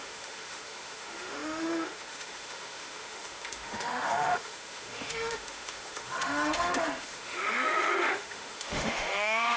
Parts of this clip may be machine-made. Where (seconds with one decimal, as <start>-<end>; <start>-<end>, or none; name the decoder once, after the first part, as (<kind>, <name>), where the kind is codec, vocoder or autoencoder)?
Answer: 0.0-9.6 (autoencoder, DAC-VAE)